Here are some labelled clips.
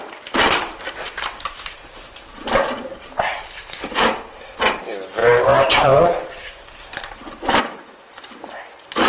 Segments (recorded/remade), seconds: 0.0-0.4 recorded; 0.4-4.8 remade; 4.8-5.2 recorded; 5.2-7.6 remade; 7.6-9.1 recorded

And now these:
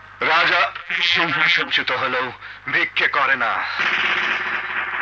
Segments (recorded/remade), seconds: 0.0-0.8 recorded; 0.8-1.7 remade; 1.7-5.0 recorded